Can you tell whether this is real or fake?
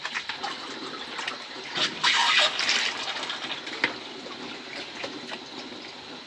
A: real